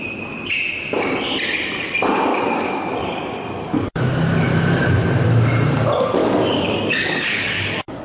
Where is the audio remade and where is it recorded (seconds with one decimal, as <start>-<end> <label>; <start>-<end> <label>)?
0.0-2.3 recorded; 2.3-4.0 remade; 4.0-6.2 recorded; 6.2-8.0 remade